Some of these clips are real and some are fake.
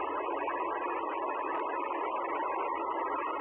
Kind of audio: real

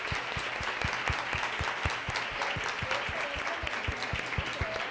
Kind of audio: real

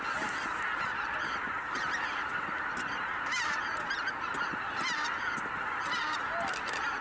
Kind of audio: real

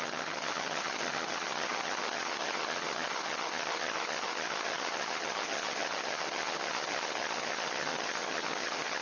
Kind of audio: fake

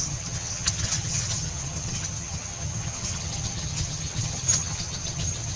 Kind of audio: fake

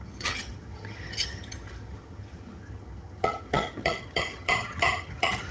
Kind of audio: fake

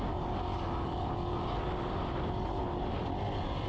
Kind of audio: real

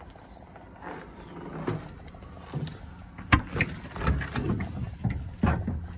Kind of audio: real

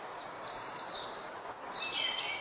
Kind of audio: real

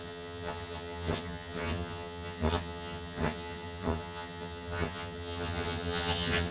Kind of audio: fake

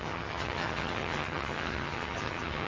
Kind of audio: fake